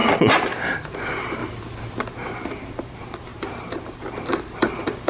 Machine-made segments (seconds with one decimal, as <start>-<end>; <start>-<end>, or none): 0.7-1.4; 2.0-5.1